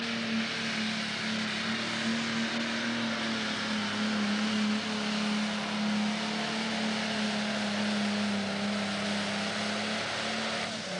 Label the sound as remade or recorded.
recorded